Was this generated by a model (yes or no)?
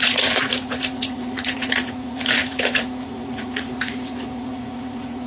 yes